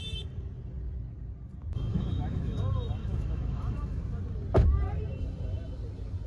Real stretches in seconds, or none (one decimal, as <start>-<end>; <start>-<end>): 0.0-1.9; 2.6-3.0; 4.0-6.3